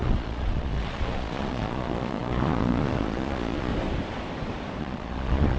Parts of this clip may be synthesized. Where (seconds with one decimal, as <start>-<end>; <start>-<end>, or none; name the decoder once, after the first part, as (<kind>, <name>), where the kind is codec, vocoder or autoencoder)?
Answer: 0.0-3.7 (vocoder, Vocos); 4.8-5.6